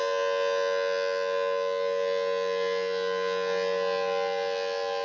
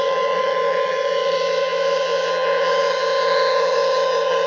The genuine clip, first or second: first